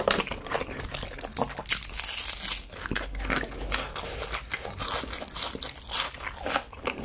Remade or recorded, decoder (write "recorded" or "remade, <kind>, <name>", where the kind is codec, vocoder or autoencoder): recorded